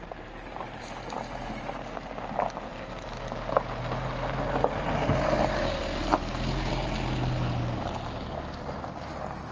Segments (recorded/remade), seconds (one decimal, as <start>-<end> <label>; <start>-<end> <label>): 0.0-9.5 recorded